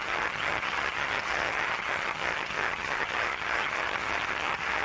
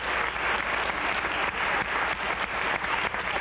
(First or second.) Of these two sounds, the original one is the second